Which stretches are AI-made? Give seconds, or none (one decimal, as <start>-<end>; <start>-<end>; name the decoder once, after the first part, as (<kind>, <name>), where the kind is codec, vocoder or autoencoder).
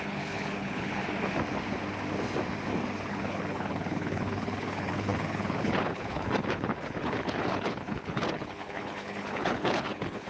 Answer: 0.0-1.0 (codec, HILCodec); 3.1-10.3